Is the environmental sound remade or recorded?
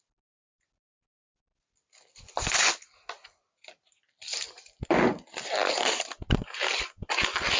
recorded